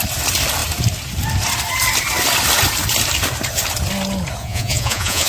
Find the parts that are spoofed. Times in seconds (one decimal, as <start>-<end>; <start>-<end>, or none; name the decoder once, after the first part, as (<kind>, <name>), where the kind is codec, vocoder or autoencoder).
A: 4.4-5.3 (vocoder, Vocos)